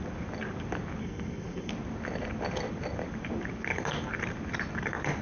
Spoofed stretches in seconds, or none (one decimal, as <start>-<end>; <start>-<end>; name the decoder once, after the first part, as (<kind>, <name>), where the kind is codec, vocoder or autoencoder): 1.0-1.7 (codec, SNAC)